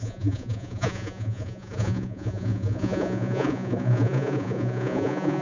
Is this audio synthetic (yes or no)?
yes